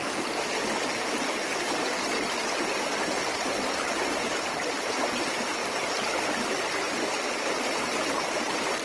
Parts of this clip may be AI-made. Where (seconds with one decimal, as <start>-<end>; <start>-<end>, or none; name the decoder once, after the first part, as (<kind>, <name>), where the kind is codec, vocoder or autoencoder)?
4.2-5.0 (vocoder, BigVGAN v2)